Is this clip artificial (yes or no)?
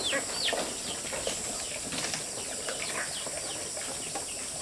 no